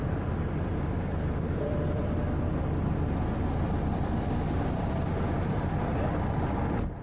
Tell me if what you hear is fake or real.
fake